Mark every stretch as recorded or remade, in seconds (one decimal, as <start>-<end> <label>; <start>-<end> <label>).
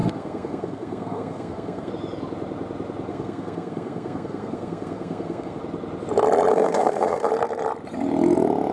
0.0-1.9 remade; 1.9-3.1 recorded; 3.1-5.6 remade; 5.6-6.5 recorded; 6.5-7.3 remade; 7.3-8.7 recorded